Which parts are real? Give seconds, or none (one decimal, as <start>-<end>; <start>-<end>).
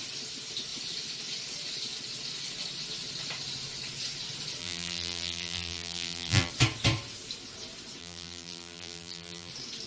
0.0-4.6; 6.5-8.0; 9.5-9.9